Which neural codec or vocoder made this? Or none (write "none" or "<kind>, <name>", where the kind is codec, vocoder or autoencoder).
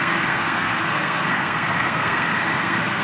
codec, SNAC